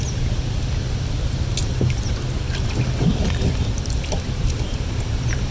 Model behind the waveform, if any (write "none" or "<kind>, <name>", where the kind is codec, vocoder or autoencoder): none